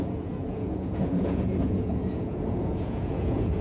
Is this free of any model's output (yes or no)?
no